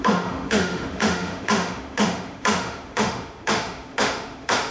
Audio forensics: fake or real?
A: fake